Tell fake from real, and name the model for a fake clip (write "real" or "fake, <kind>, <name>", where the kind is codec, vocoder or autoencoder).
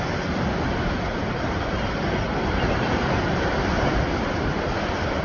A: real